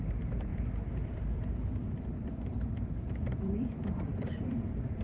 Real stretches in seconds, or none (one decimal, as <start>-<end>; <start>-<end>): none